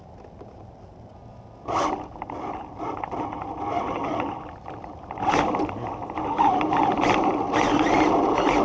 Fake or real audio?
real